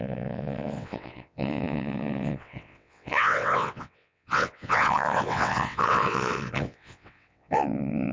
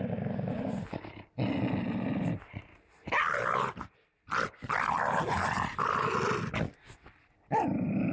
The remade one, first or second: first